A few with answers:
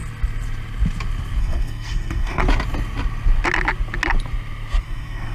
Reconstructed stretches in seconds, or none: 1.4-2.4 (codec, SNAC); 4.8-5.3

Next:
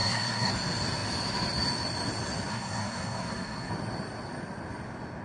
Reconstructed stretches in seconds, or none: 0.0-0.5 (codec, SNAC); 2.5-3.7

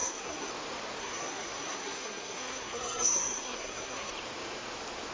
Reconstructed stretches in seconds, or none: 0.0-0.5 (codec, SNAC); 1.0-4.1

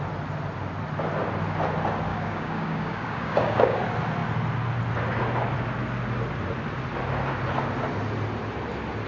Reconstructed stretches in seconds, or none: 2.1-3.8 (codec, DAC)

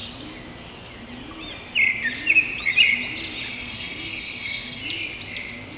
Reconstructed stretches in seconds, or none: 3.5-4.8 (codec, SNAC)

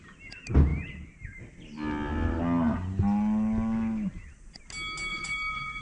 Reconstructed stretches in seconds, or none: 5.1-5.8 (vocoder, Vocos)